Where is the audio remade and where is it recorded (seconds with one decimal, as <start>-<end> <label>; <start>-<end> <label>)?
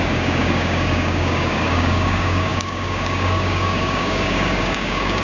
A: 0.0-5.2 remade